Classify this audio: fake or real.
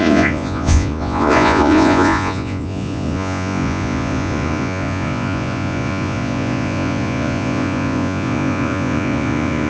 fake